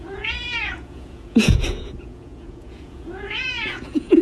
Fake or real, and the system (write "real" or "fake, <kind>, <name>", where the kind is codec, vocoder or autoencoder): fake, vocoder, Vocos